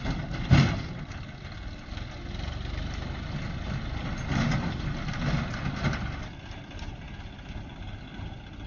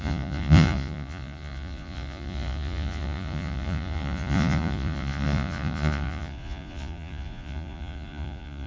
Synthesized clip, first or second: second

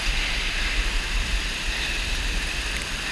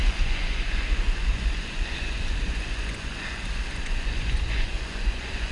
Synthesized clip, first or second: second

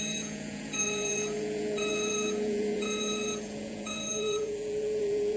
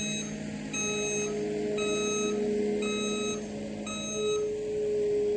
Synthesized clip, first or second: first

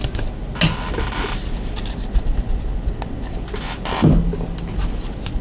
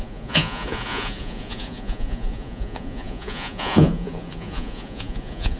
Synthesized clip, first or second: second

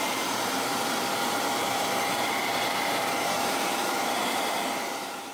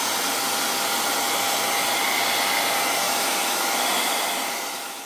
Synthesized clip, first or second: first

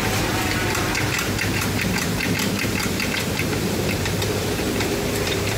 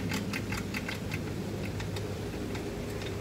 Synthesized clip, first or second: first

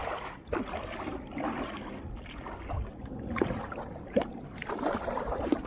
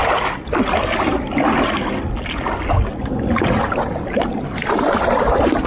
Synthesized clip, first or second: first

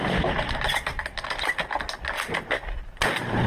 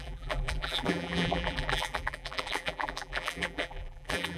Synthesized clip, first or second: second